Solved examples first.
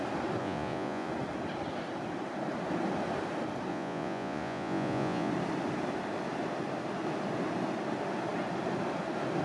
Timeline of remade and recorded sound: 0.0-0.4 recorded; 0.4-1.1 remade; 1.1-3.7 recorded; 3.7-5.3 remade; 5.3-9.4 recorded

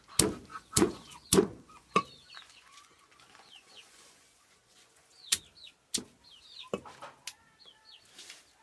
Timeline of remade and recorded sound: 0.0-0.5 recorded; 0.5-5.4 remade; 5.4-8.6 recorded

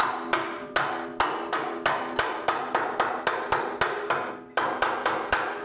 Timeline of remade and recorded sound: 0.0-5.6 recorded

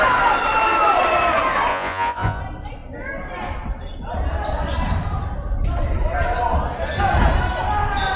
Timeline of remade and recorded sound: 0.0-1.7 recorded; 1.7-2.4 remade; 2.4-8.2 recorded

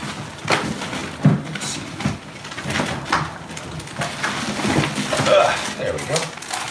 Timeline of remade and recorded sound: 0.0-6.7 recorded

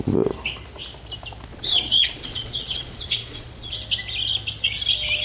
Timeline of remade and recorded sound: 0.0-1.5 recorded; 1.5-3.7 remade; 3.7-5.2 recorded